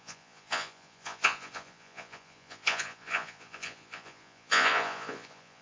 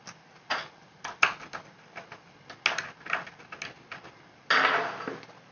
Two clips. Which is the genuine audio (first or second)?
second